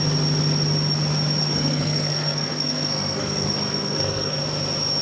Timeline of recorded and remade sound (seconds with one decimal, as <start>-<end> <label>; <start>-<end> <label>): 0.0-1.4 recorded; 1.4-4.4 remade; 4.4-5.0 recorded